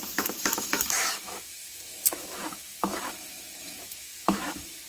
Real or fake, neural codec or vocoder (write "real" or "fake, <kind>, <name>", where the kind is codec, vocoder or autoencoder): fake, autoencoder, DAC-VAE